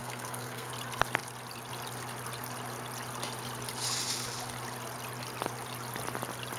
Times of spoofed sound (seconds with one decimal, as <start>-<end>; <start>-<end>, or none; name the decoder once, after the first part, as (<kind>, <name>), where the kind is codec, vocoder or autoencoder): 0.0-0.7 (codec, SNAC)